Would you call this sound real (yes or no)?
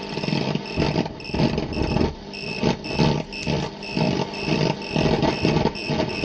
yes